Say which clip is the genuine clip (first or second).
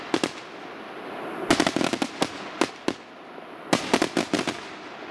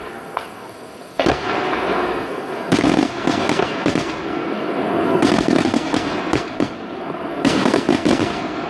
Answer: first